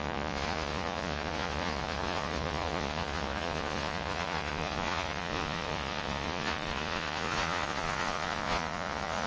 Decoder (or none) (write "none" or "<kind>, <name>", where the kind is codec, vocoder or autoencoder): vocoder, Vocos